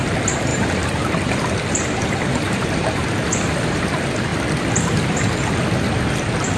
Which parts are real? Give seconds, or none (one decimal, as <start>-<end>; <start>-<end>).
0.0-0.5; 3.8-6.6